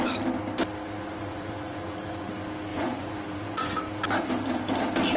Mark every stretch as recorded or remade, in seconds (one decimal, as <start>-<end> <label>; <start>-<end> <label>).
0.0-0.8 recorded; 0.8-2.3 remade; 2.3-2.7 recorded; 2.7-3.7 remade; 3.7-5.2 recorded